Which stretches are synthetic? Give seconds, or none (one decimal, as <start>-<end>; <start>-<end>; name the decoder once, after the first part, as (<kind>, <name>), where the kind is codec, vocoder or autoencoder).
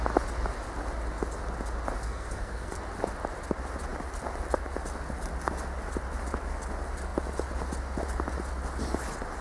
2.0-2.8 (codec, SNAC)